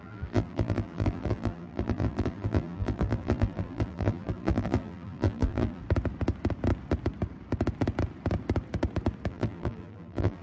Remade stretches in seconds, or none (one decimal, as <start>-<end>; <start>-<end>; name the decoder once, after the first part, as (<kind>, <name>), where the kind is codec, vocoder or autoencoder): 0.0-5.8 (vocoder, BigVGAN v2); 9.3-10.4